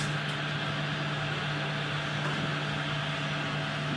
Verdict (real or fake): real